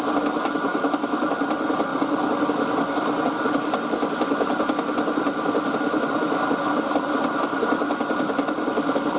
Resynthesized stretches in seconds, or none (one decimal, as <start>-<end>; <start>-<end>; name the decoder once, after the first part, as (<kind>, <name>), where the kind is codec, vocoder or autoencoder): 0.7-1.2 (autoencoder, DAC-VAE)